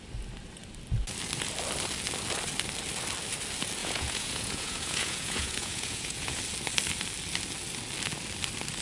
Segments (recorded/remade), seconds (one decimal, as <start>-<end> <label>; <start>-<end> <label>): 0.0-3.8 recorded; 3.8-6.4 remade; 6.4-8.8 recorded